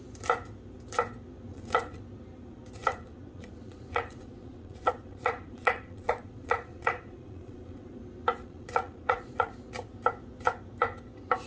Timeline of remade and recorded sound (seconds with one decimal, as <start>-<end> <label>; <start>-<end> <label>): 0.0-1.5 recorded; 1.5-2.0 remade; 2.0-2.8 recorded; 2.8-8.0 remade; 8.0-8.4 recorded; 8.4-9.5 remade; 9.5-11.5 recorded